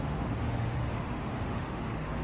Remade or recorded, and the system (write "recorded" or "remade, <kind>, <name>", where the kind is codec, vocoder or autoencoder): remade, autoencoder, DAC-VAE